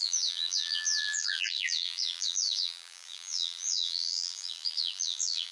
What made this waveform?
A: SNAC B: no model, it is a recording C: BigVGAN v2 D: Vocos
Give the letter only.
C